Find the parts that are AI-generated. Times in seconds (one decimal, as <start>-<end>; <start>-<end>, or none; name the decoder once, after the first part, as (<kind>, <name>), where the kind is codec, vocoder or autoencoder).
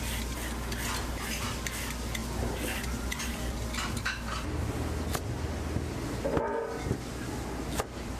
none